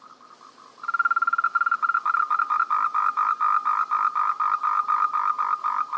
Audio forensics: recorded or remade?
recorded